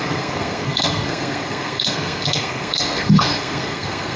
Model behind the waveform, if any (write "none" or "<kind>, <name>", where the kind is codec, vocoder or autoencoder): codec, SNAC